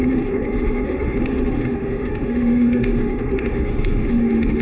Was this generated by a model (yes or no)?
yes